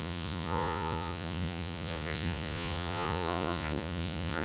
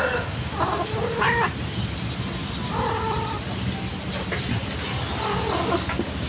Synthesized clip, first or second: first